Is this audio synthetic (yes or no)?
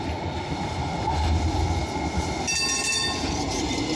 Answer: no